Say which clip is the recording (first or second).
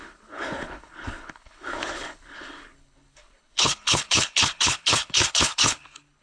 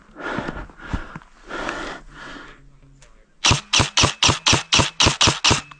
second